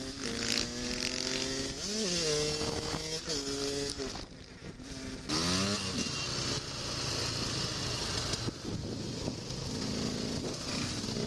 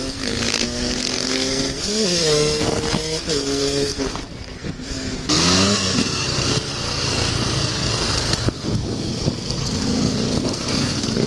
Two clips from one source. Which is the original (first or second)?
first